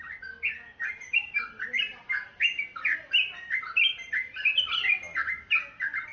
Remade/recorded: recorded